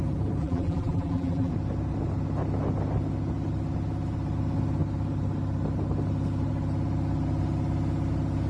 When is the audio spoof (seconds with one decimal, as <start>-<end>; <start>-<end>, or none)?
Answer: 0.4-1.5